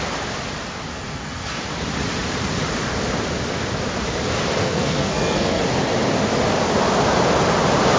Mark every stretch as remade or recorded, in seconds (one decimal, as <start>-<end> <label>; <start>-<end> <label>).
0.0-0.9 recorded; 0.9-1.6 remade; 1.6-4.6 recorded; 4.6-5.6 remade; 5.6-8.0 recorded